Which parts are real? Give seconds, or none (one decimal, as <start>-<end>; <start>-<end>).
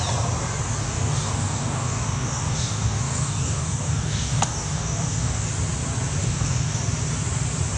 0.0-0.8; 5.5-6.2; 6.8-7.8